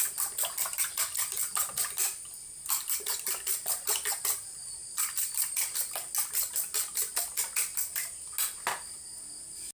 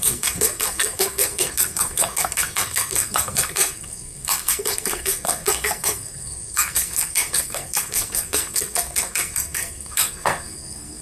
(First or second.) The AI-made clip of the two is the second